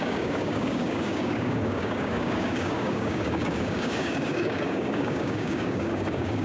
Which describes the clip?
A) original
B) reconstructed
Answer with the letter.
B